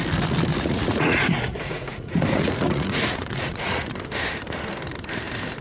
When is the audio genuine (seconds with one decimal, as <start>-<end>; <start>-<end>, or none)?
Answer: 0.0-0.5; 3.9-5.6

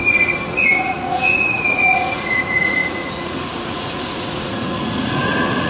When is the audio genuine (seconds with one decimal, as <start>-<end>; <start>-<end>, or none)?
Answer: none

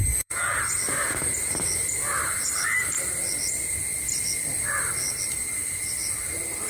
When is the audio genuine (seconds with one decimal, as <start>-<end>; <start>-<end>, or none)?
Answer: 0.7-6.7

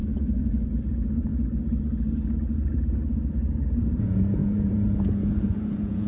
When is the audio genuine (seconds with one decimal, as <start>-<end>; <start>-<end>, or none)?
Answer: 1.3-3.8

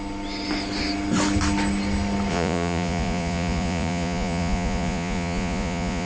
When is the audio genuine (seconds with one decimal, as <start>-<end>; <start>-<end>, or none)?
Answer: 0.0-2.3

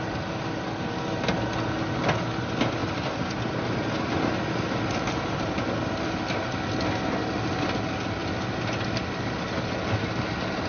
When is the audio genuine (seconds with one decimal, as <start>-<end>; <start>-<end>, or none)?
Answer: 0.0-10.7

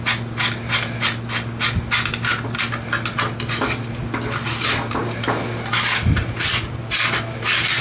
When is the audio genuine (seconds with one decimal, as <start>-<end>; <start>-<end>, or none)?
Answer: 0.0-7.8

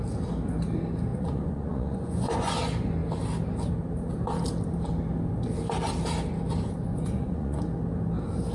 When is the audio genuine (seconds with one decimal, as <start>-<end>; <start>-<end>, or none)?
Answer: 0.0-1.1; 2.5-6.9; 7.6-8.5